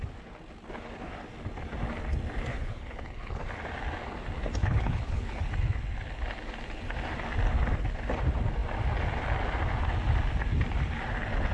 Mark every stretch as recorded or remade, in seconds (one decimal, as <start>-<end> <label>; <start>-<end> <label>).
0.0-2.5 recorded; 2.5-3.4 remade; 3.4-4.6 recorded; 4.6-5.5 remade; 5.5-11.5 recorded